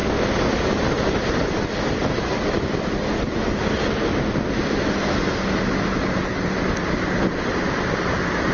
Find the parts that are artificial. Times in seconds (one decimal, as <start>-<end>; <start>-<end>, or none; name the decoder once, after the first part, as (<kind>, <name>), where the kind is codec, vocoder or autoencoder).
none